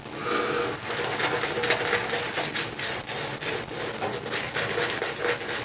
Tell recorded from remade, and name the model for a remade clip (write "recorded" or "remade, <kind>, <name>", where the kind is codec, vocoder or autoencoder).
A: recorded